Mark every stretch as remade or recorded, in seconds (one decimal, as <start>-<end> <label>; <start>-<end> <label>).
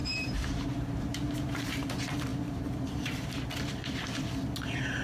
0.0-1.9 remade; 1.9-2.3 recorded; 2.3-3.3 remade; 3.3-5.0 recorded